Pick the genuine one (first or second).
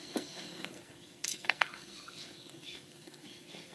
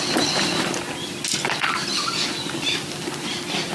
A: second